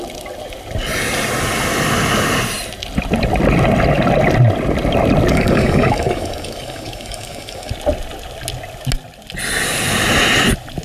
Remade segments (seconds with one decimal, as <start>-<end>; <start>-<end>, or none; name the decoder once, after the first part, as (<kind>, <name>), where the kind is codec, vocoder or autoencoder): 5.3-7.7 (codec, DAC)